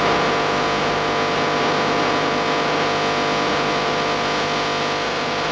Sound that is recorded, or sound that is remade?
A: recorded